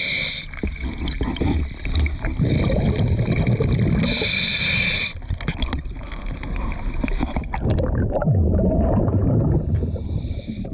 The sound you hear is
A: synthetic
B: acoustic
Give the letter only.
B